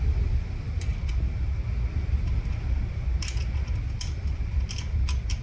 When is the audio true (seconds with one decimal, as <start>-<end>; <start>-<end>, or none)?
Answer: 0.9-2.6; 3.4-4.3